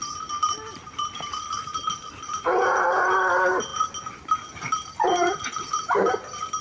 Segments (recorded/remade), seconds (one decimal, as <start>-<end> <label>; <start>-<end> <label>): 0.0-6.6 recorded